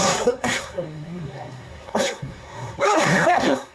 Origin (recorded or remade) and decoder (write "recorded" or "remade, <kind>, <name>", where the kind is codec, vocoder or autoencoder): remade, codec, SNAC